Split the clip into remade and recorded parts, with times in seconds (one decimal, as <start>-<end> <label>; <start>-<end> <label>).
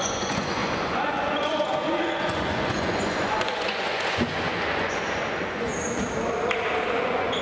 0.0-5.7 remade; 5.7-6.9 recorded; 6.9-7.4 remade